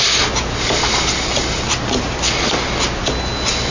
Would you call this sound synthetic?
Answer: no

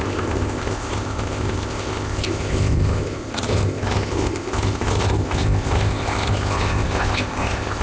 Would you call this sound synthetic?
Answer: yes